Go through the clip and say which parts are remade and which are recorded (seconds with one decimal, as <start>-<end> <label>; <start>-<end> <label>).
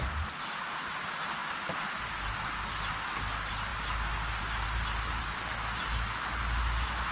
0.0-7.1 recorded